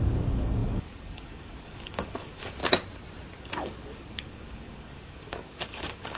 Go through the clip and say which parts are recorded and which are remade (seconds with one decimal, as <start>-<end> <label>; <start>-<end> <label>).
0.0-2.6 remade; 2.6-3.4 recorded; 3.4-6.2 remade